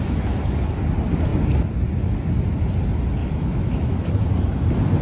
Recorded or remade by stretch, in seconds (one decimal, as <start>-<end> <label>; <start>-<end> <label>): 0.0-3.2 recorded; 3.2-4.1 remade; 4.1-5.0 recorded